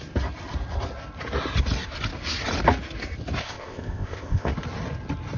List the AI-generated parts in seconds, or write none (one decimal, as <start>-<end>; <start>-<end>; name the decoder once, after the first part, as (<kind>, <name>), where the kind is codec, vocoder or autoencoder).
3.4-4.5 (codec, ZipCodec)